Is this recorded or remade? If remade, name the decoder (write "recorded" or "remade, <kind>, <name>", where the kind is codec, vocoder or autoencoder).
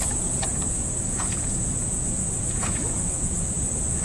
remade, vocoder, Vocos